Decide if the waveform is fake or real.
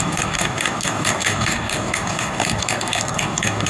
fake